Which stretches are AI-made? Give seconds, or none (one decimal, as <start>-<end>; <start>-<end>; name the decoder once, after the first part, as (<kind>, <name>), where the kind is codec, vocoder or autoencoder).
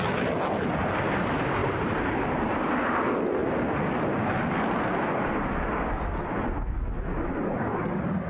1.6-3.0 (vocoder, BigVGAN v2)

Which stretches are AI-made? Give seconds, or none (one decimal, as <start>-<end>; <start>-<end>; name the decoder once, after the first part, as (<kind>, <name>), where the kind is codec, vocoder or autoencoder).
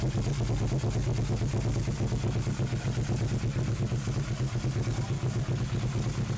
none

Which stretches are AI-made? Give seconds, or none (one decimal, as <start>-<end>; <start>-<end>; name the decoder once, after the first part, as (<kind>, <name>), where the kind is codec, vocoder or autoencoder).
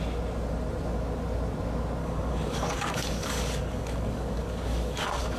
2.0-5.4 (codec, DAC)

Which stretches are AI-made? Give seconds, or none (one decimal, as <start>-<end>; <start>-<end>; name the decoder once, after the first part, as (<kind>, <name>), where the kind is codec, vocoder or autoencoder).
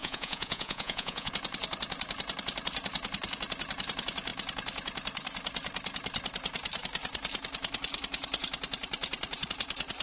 0.0-1.3 (vocoder, Vocos)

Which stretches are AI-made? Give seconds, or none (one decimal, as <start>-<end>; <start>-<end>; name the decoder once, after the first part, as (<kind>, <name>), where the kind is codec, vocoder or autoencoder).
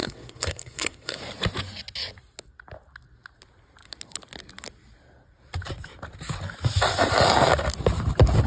0.0-1.2 (codec, SNAC)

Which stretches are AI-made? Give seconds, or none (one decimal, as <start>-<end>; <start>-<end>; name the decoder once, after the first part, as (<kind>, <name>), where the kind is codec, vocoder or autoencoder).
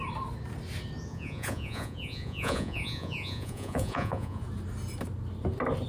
1.1-4.4 (vocoder, Vocos)